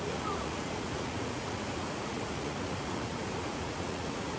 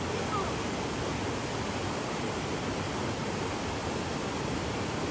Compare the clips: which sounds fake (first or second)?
first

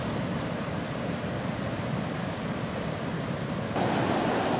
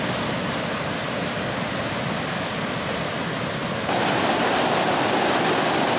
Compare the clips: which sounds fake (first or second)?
first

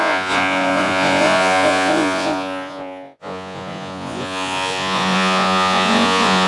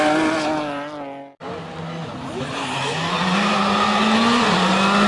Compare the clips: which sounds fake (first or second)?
first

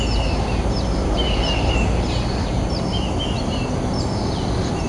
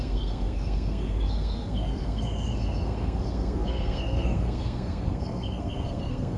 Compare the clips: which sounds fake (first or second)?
second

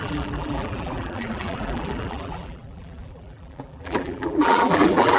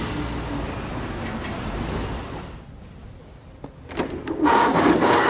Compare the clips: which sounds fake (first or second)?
first